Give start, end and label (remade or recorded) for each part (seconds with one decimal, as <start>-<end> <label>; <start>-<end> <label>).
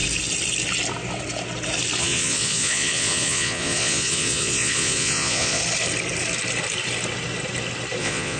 0.0-2.0 recorded; 2.0-5.6 remade; 5.6-8.0 recorded; 8.0-8.4 remade